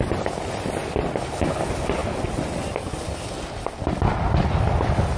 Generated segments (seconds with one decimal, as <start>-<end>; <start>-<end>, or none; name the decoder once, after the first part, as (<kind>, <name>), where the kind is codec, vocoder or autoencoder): none